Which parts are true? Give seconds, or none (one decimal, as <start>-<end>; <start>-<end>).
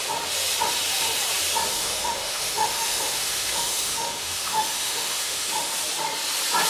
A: 0.0-1.7; 5.7-6.7